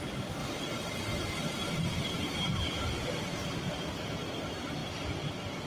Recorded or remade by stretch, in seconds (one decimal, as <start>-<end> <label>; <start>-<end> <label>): 0.0-0.4 recorded; 0.4-3.7 remade; 3.7-5.7 recorded